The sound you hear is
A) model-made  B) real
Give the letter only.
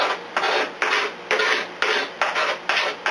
B